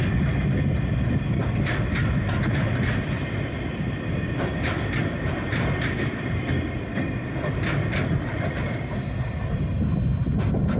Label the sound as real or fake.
real